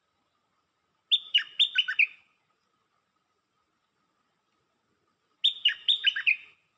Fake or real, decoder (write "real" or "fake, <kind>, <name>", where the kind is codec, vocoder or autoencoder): real